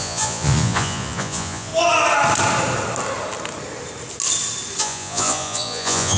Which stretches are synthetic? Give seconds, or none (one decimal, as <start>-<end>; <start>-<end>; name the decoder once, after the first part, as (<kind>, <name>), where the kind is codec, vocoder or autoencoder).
0.0-1.7 (vocoder, Vocos); 4.8-6.2